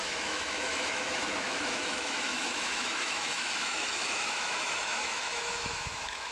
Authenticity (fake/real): fake